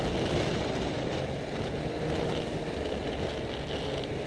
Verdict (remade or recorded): recorded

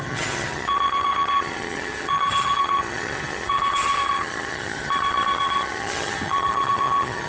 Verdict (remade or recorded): remade